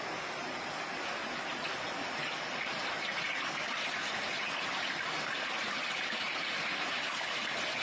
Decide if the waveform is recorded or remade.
recorded